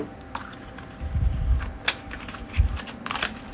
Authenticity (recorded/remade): recorded